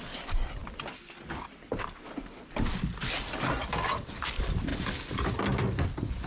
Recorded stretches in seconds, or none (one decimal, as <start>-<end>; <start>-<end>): 0.0-6.3